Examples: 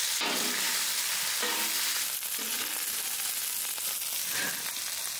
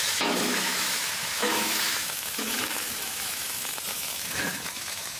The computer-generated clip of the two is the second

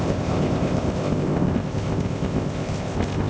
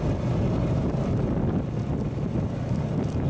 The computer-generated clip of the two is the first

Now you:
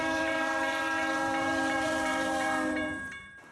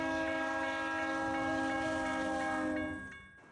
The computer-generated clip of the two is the first